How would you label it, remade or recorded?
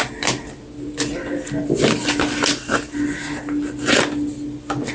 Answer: recorded